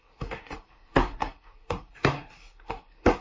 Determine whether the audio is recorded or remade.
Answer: remade